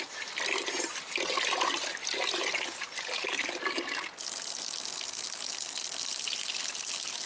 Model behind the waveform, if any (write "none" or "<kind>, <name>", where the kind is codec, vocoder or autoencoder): none